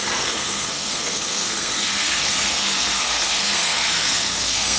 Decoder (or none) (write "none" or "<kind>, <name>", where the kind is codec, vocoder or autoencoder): codec, SNAC